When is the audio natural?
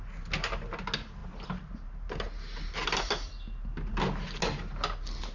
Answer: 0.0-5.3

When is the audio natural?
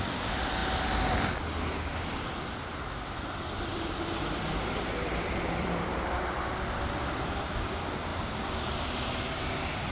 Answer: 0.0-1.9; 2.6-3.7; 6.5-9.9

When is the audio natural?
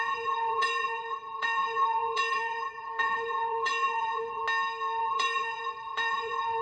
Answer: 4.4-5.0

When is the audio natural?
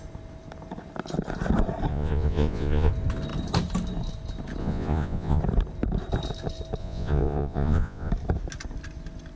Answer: 0.0-1.9; 2.9-4.6; 5.4-6.8; 8.1-9.4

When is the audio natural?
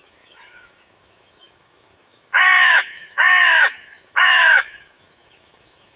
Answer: none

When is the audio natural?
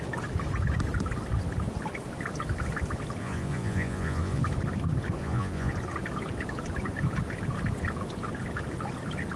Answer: 0.0-3.2; 4.4-5.2; 5.7-9.4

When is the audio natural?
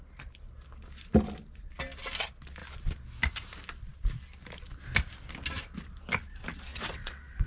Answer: 0.0-6.7